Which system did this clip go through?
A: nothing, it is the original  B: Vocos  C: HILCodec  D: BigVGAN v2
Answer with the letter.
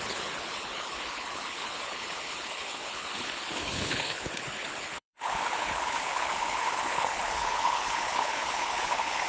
C